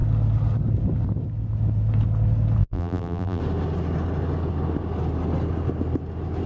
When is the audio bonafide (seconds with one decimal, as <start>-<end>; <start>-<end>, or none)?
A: 0.0-2.6; 3.4-6.5